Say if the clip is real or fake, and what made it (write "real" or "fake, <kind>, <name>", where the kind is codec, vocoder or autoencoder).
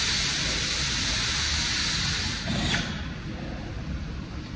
real